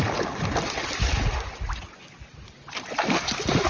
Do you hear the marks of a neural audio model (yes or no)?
no